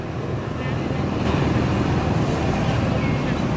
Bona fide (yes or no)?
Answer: yes